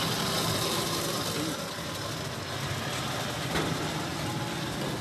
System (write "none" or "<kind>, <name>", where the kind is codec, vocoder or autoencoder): none